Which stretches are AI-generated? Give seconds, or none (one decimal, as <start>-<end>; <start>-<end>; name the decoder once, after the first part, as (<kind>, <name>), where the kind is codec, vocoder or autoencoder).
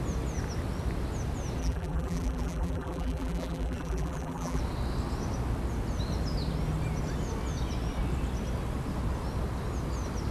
1.6-4.6 (vocoder, BigVGAN v2)